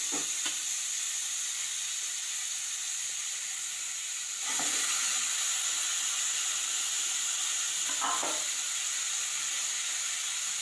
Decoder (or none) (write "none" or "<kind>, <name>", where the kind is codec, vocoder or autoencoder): none